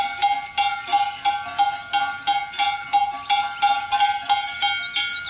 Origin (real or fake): real